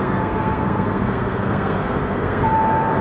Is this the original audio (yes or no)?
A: no